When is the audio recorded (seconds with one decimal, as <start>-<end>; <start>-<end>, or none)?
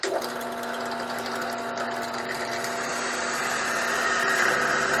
0.0-5.0